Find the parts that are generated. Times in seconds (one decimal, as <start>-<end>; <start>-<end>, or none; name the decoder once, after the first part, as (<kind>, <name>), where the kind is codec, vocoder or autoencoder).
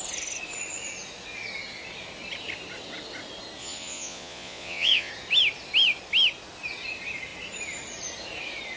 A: 3.6-5.1 (vocoder, Vocos)